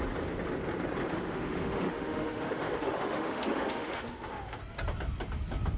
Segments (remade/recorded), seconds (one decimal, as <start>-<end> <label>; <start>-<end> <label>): 0.0-1.1 recorded; 1.1-4.6 remade; 4.6-5.8 recorded